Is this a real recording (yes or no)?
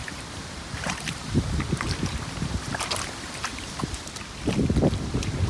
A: no